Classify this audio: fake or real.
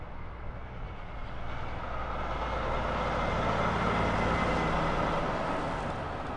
real